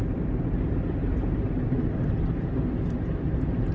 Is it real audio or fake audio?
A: real